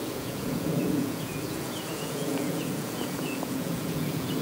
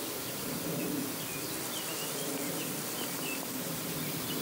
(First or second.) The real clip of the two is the second